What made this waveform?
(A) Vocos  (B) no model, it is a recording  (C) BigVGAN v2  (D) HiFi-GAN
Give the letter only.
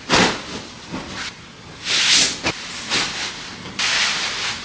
B